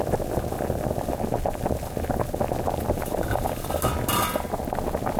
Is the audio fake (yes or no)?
no